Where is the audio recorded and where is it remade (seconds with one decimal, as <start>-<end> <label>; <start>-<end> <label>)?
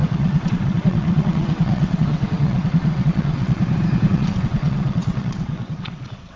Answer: 0.0-3.6 remade; 3.6-4.1 recorded; 4.1-6.4 remade